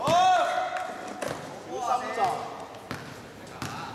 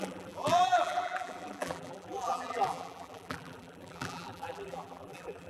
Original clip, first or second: first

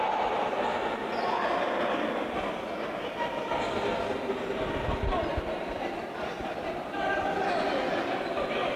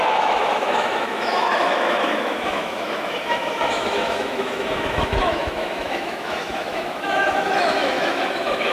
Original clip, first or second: first